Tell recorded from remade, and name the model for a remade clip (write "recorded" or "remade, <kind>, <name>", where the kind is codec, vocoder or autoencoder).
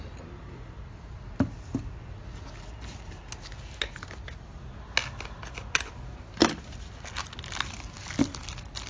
recorded